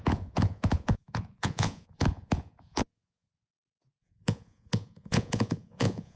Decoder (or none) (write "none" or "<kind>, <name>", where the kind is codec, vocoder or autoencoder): vocoder, Vocos